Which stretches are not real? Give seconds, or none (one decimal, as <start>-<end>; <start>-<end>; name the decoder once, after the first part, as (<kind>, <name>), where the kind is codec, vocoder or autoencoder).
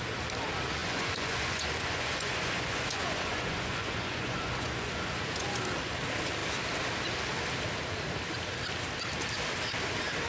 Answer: 0.8-5.6 (vocoder, Vocos)